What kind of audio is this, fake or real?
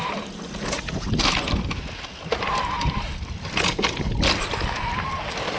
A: real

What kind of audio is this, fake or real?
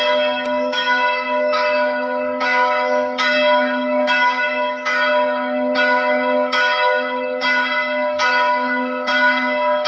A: fake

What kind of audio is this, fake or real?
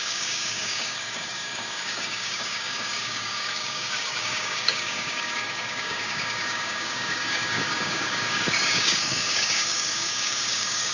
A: fake